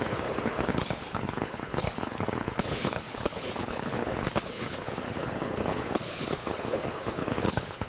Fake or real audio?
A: fake